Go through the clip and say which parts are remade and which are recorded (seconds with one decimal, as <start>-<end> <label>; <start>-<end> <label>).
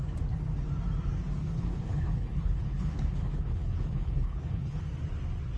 0.0-1.4 recorded; 1.4-4.8 remade; 4.8-5.6 recorded